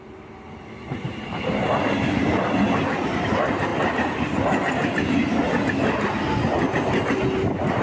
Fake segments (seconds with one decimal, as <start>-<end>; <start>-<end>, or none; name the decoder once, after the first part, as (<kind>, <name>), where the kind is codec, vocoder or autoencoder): none